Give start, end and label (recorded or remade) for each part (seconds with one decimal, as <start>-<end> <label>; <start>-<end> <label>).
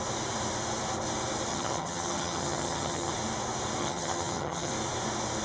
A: 0.0-1.5 recorded; 1.5-3.1 remade; 3.1-3.8 recorded; 3.8-4.7 remade; 4.7-5.4 recorded